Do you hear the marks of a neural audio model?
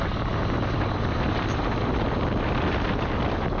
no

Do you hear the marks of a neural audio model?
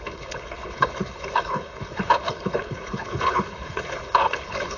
yes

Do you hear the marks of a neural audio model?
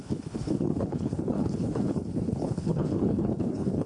yes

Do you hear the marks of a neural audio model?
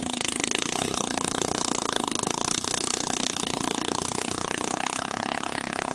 yes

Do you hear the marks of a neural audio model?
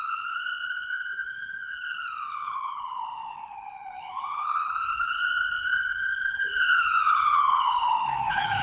yes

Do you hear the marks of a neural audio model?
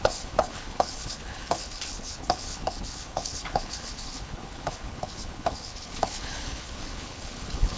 yes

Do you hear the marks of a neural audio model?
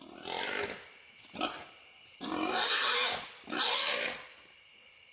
no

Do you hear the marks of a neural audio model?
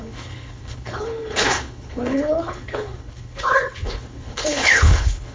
yes